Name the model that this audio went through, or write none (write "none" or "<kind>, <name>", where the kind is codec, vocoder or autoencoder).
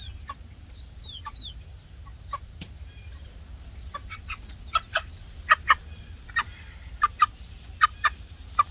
none